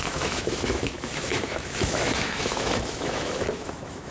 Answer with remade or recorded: remade